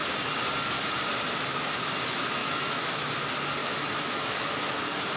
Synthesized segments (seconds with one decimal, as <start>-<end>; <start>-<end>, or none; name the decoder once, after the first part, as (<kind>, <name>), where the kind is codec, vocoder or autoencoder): 2.4-3.1 (autoencoder, DAC-VAE); 3.6-4.7